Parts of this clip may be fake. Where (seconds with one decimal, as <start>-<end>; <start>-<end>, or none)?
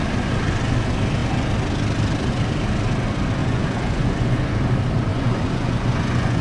3.4-4.6; 5.1-6.4